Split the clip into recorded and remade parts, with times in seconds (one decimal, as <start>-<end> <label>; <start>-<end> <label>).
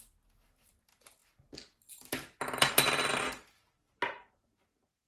0.0-5.1 recorded